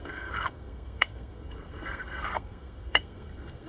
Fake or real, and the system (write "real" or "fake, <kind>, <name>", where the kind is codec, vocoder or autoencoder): fake, codec, SNAC